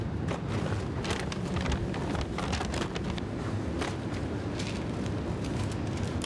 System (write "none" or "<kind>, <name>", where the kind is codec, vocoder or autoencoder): none